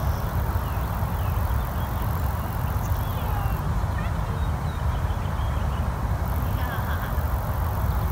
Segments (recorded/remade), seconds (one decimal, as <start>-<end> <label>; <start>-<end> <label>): 0.0-8.1 recorded